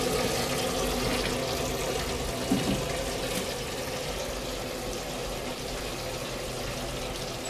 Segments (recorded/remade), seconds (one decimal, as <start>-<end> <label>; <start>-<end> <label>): 0.0-5.2 recorded; 5.2-5.9 remade; 5.9-7.5 recorded